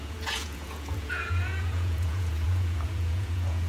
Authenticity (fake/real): fake